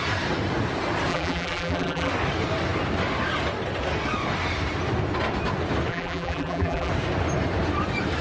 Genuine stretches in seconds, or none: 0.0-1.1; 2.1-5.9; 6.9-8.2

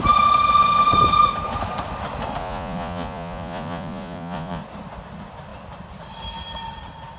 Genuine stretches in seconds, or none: 0.0-2.4; 4.6-7.2